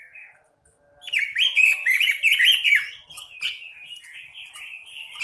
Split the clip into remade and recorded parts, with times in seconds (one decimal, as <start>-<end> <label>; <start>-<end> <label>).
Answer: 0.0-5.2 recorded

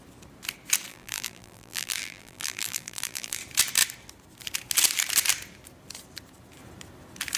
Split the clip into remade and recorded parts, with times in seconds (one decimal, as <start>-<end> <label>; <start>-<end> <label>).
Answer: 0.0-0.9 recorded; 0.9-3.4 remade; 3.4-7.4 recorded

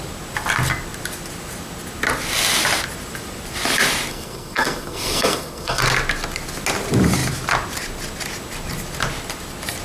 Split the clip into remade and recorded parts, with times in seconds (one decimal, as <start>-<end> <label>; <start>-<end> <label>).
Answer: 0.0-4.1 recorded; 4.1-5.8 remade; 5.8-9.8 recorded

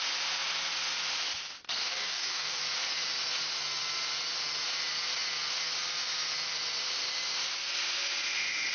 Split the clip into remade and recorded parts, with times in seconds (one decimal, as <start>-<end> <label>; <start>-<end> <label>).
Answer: 0.0-1.9 recorded; 1.9-2.6 remade; 2.6-8.7 recorded

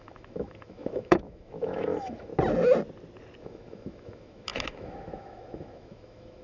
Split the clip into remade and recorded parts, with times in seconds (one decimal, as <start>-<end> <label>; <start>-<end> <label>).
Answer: 0.0-2.3 remade; 2.3-3.4 recorded; 3.4-6.4 remade

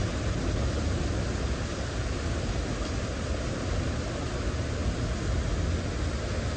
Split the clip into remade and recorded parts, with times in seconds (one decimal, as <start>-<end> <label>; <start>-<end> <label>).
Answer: 0.0-6.6 recorded